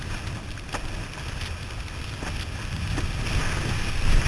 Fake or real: real